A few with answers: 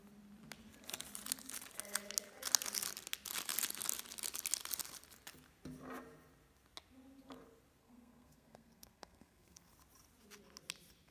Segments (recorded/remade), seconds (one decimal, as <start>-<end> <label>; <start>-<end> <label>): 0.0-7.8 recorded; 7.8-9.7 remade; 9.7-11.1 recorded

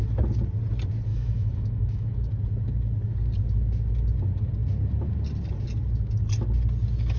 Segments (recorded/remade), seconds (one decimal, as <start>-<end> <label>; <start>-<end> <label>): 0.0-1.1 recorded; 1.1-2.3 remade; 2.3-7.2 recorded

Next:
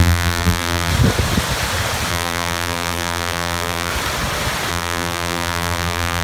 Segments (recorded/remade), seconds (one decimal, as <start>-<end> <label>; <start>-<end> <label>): 0.0-0.9 remade; 0.9-2.1 recorded; 2.1-3.9 remade; 3.9-4.7 recorded; 4.7-6.2 remade